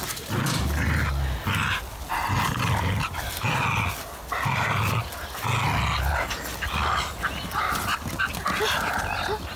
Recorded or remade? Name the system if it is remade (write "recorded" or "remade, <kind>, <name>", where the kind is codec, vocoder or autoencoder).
recorded